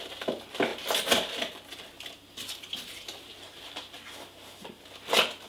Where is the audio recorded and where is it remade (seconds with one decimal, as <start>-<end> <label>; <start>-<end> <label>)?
0.0-5.5 recorded